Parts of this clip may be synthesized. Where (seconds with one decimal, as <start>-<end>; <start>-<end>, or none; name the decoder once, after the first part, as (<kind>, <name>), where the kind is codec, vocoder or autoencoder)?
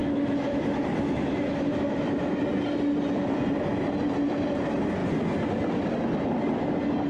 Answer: 0.0-2.4 (autoencoder, DAC-VAE)